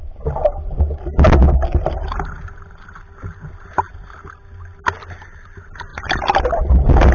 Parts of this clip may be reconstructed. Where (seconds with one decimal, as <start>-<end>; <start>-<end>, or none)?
none